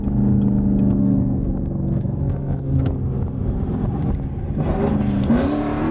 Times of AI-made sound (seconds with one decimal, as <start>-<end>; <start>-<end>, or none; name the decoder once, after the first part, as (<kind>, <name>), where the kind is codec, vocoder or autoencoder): 1.0-2.8 (codec, SNAC)